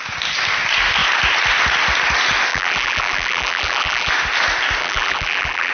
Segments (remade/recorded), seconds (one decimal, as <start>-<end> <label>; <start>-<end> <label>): 0.0-2.5 recorded; 2.5-4.1 remade; 4.1-4.8 recorded; 4.8-5.7 remade